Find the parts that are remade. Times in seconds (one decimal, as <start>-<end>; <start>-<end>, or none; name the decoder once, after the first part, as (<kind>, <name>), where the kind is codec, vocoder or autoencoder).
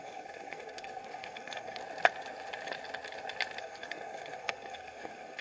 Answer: 0.0-1.8 (codec, SNAC); 3.6-5.4